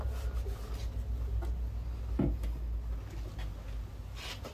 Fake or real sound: real